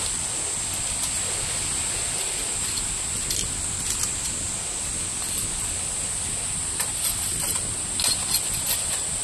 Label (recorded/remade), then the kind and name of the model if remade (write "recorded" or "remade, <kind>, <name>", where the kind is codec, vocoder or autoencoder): recorded